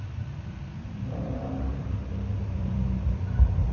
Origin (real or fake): fake